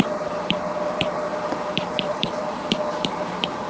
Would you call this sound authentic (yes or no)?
no